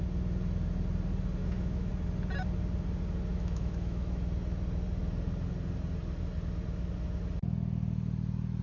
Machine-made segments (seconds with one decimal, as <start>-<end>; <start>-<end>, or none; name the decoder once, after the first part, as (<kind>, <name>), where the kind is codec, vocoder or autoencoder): 1.4-1.9 (autoencoder, DAC-VAE); 3.3-4.2